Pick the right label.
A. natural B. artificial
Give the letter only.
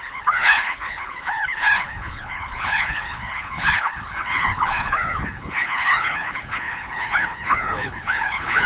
B